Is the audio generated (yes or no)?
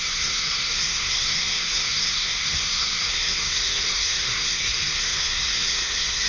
yes